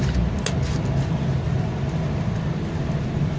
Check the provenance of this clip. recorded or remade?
recorded